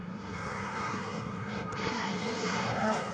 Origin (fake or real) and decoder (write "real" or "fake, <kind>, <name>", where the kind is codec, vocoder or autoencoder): fake, codec, SNAC